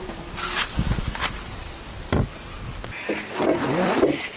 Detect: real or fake real